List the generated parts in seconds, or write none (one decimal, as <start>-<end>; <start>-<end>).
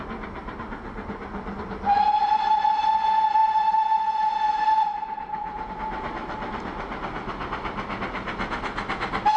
none